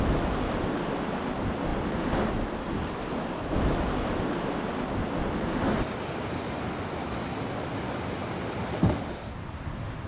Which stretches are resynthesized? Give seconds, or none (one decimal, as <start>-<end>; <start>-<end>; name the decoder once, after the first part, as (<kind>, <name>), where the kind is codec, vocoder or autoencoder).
none